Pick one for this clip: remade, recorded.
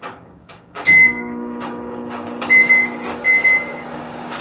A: remade